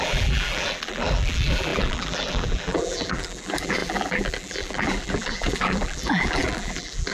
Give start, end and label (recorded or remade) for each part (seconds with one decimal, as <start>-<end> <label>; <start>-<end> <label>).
0.0-7.1 remade